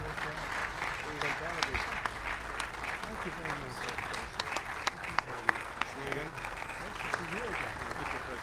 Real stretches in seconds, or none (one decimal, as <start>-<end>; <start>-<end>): 0.0-4.9; 6.8-8.4